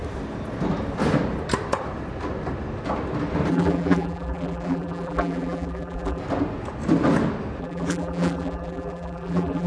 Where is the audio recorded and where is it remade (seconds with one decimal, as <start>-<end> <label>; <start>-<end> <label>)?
0.0-3.5 recorded; 3.5-6.2 remade; 6.2-7.6 recorded; 7.6-9.7 remade